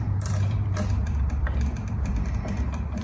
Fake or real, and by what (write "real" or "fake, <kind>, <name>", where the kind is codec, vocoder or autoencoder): fake, vocoder, BigVGAN v2